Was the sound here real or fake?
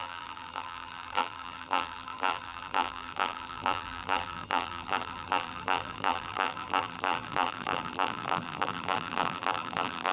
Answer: fake